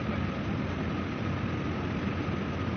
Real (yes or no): yes